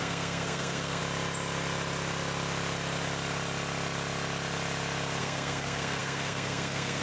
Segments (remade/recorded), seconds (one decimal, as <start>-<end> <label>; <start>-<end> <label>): 0.0-1.0 remade; 1.0-5.2 recorded; 5.2-7.0 remade